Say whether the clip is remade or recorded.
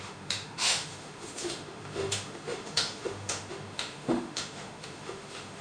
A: remade